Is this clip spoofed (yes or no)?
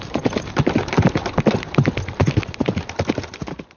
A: no